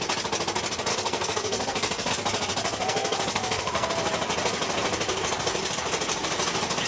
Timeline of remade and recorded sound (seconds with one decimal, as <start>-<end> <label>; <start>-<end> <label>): 0.0-0.9 recorded; 0.9-2.1 remade; 2.1-2.7 recorded; 2.7-3.9 remade; 3.9-6.9 recorded